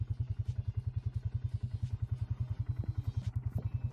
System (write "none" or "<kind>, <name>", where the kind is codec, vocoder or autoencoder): none